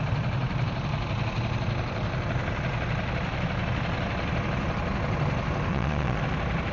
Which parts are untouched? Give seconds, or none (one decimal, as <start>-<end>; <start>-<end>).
0.0-5.7; 6.2-6.7